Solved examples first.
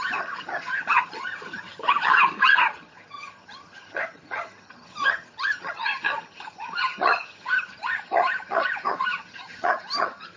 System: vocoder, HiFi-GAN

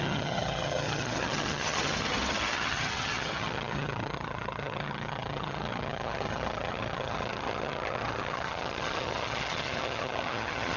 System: vocoder, HiFi-GAN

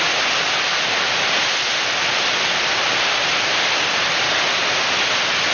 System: none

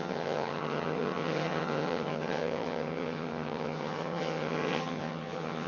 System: vocoder, HiFi-GAN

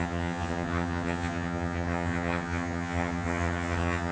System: vocoder, HiFi-GAN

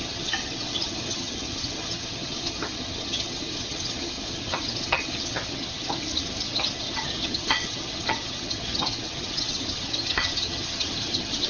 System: vocoder, HiFi-GAN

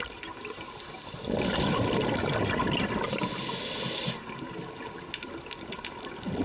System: none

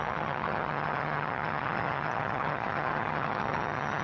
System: vocoder, HiFi-GAN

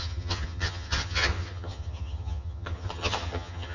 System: vocoder, HiFi-GAN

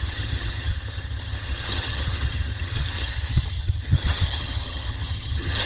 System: vocoder, HiFi-GAN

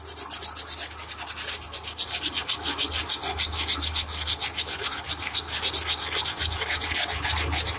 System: none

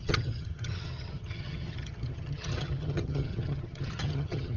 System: vocoder, HiFi-GAN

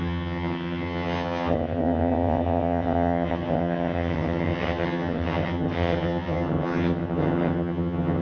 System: vocoder, HiFi-GAN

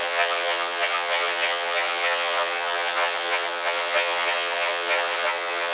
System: vocoder, HiFi-GAN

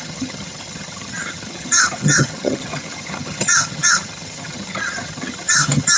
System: vocoder, HiFi-GAN